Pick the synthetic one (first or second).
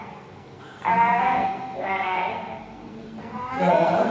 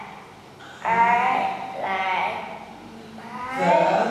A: first